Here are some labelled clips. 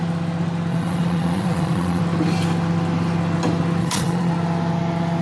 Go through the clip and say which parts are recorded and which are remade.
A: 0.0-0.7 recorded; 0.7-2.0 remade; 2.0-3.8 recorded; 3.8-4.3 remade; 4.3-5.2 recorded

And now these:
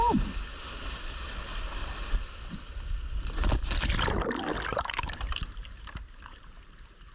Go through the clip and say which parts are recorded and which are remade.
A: 0.0-4.7 recorded; 4.7-5.4 remade; 5.4-7.1 recorded

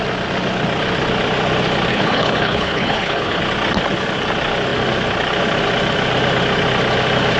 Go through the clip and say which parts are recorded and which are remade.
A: 0.0-1.9 recorded; 1.9-3.4 remade; 3.4-7.4 recorded

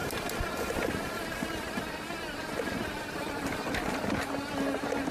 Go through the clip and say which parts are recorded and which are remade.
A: 0.0-3.1 recorded; 3.1-4.0 remade; 4.0-5.1 recorded

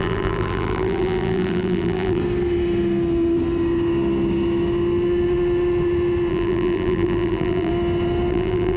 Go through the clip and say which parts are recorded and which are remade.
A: 0.0-2.2 remade; 2.2-6.3 recorded; 6.3-7.7 remade; 7.7-8.3 recorded; 8.3-8.8 remade

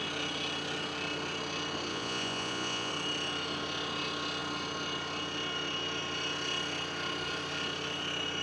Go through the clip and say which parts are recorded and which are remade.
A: 0.0-1.9 recorded; 1.9-2.9 remade; 2.9-8.4 recorded